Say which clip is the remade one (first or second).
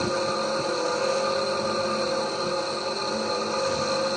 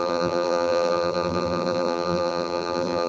second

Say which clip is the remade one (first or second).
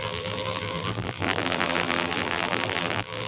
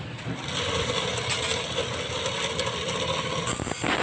first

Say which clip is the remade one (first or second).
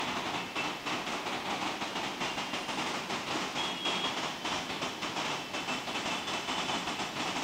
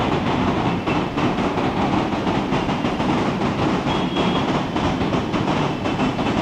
second